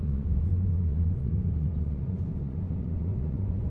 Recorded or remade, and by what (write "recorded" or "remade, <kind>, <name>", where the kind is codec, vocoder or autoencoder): remade, vocoder, Vocos